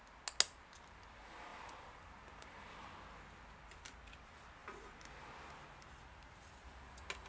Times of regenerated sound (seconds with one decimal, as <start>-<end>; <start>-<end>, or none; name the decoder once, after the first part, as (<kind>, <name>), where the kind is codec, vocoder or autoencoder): 1.5-2.7 (vocoder, BigVGAN v2)